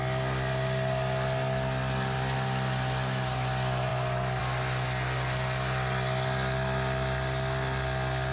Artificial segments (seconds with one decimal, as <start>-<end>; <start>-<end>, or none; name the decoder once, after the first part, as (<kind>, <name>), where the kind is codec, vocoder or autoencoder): 3.9-4.4 (vocoder, BigVGAN v2)

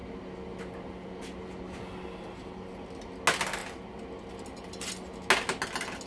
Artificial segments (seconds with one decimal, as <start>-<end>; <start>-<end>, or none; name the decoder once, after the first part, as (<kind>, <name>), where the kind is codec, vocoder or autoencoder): none